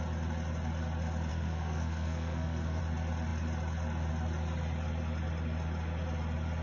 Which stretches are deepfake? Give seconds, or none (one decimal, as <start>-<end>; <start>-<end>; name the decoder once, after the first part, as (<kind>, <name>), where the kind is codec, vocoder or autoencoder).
1.3-2.8 (codec, SNAC)